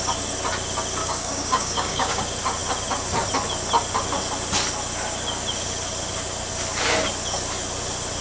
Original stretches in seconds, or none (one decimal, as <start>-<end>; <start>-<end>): 0.0-1.0; 2.2-8.2